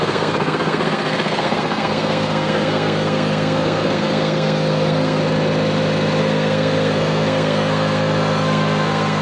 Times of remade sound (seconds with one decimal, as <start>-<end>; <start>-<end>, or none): 0.0-5.2; 6.2-9.2